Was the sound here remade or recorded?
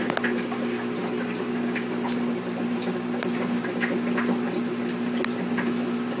recorded